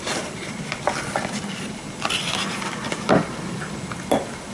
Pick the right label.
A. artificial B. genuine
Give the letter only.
B